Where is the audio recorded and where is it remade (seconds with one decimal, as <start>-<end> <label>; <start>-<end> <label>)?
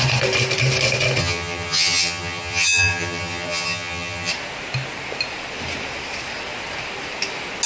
0.0-1.2 recorded; 1.2-4.3 remade; 4.3-7.7 recorded